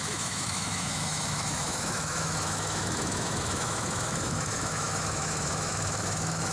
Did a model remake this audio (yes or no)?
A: yes